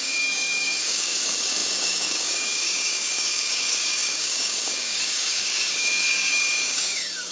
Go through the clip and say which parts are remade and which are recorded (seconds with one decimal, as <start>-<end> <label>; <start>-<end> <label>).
0.0-7.3 remade